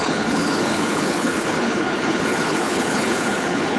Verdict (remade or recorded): remade